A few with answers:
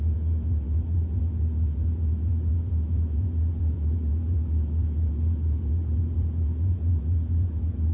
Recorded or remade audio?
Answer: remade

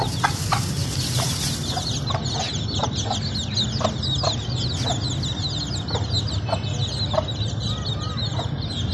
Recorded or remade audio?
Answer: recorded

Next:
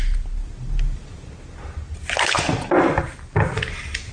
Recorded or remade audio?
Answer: recorded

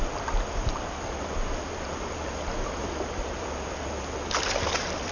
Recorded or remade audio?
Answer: recorded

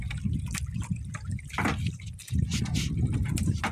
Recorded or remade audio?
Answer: recorded